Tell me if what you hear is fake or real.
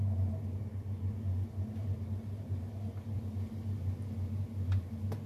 real